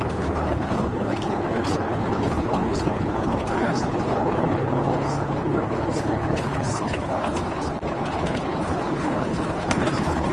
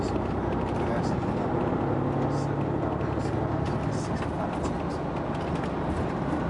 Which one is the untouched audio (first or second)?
second